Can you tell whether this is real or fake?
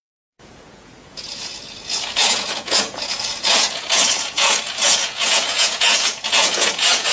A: fake